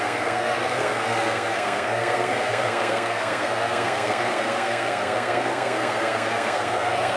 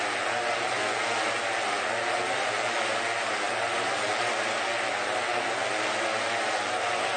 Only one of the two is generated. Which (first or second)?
first